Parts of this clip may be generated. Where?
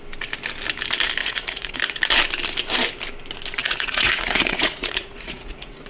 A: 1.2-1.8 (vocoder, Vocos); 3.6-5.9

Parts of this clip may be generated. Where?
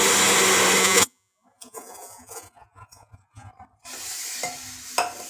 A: 0.8-3.5 (vocoder, Vocos)